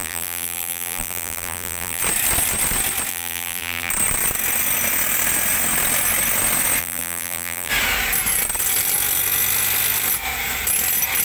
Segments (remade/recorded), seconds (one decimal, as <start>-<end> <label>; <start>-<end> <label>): 0.0-2.0 remade; 2.0-3.1 recorded; 3.1-3.9 remade; 3.9-6.8 recorded; 6.8-7.7 remade; 7.7-11.2 recorded